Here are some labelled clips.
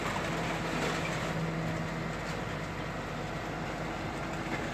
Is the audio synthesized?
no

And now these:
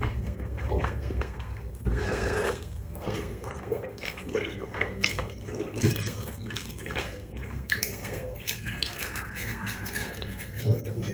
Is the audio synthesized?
yes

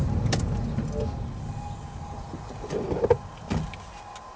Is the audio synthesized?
no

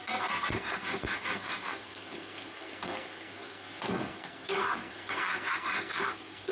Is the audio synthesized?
yes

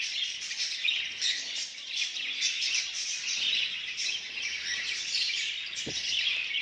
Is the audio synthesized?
no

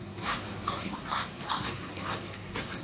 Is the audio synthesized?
yes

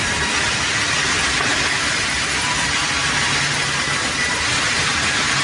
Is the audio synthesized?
no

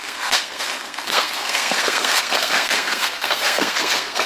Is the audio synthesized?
yes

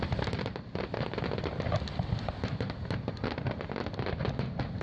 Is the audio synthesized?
no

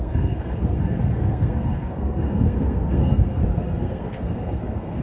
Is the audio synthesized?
yes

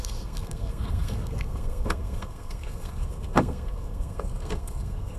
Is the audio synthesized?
yes